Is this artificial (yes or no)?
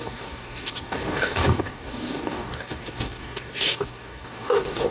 yes